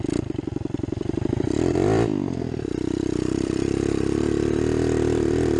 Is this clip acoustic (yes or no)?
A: no